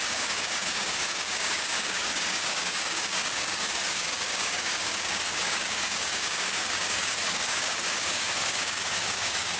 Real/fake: fake